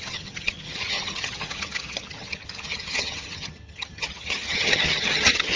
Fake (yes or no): yes